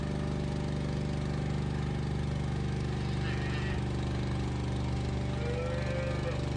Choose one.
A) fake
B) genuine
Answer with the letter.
B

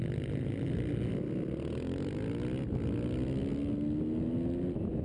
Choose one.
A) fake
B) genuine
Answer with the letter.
B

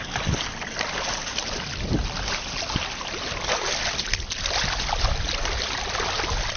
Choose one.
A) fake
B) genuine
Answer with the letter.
B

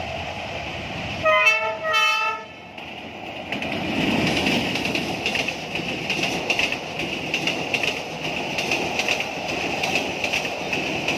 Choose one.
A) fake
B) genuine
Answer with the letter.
B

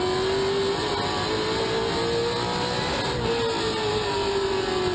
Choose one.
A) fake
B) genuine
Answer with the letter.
B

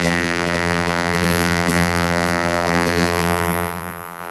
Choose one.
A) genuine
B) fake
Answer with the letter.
B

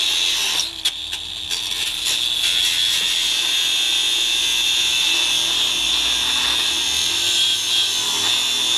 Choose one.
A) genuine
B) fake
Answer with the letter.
A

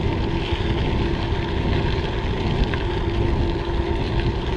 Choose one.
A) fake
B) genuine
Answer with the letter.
B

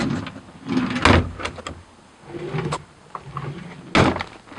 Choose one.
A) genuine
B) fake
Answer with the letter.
A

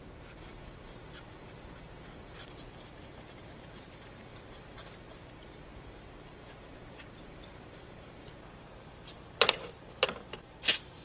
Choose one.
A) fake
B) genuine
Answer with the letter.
A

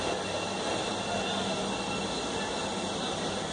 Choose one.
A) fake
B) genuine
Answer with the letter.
B